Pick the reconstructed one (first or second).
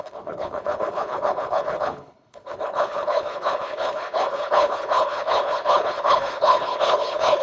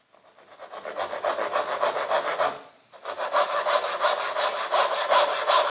first